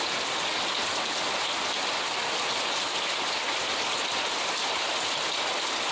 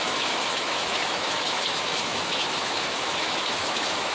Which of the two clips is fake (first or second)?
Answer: second